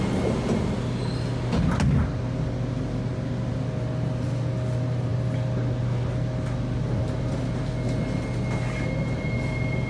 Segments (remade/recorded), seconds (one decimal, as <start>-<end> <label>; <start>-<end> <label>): 0.0-9.9 recorded